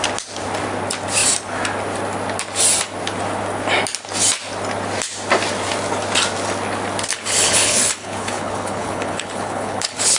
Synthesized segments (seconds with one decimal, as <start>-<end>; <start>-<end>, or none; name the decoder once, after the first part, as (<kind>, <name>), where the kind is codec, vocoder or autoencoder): 7.1-10.2 (codec, HILCodec)